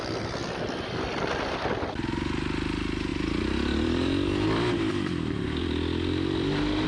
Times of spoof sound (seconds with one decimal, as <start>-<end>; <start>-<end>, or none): 0.4-1.0; 3.1-5.6